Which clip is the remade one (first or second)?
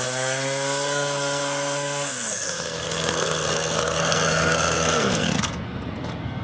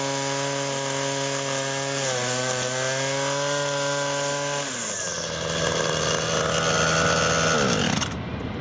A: first